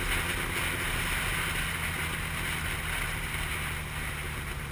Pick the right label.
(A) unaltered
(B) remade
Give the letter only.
A